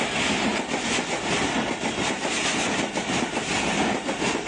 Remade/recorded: recorded